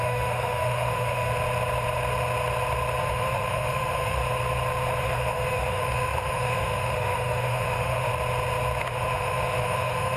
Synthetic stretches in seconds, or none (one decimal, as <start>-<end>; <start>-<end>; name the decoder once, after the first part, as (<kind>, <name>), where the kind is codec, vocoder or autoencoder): 0.0-1.3 (autoencoder, DAC-VAE); 3.0-4.2; 5.0-8.1; 8.8-10.2